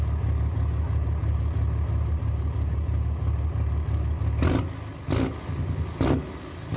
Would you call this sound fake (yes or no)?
no